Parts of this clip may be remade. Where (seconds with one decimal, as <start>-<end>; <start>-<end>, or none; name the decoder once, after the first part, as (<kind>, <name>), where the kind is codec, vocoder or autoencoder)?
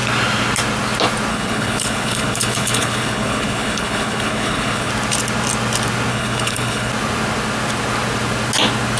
1.3-4.9 (codec, HILCodec); 6.1-6.9